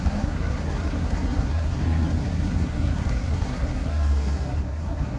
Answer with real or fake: fake